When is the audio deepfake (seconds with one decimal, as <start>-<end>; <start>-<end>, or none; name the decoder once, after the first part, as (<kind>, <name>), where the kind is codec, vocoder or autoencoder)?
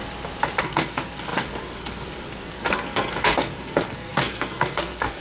0.6-5.2 (codec, SNAC)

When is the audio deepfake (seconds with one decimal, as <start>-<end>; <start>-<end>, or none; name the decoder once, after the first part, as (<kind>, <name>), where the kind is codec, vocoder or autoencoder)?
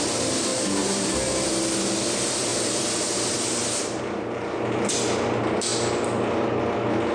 0.5-1.5 (vocoder, BigVGAN v2); 2.5-4.0